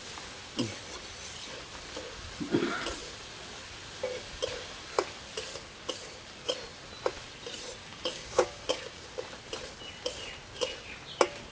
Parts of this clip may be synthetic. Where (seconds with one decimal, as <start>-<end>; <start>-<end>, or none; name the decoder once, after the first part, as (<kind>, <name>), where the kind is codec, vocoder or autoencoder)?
7.9-9.0 (codec, DAC)